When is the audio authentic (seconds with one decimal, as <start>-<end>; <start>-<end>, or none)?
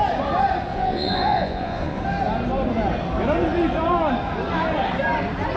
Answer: 0.0-0.7; 2.0-5.6